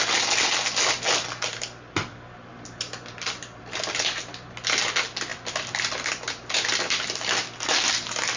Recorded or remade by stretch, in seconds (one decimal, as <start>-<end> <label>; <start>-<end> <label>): 0.0-5.3 recorded; 5.3-7.3 remade; 7.3-8.4 recorded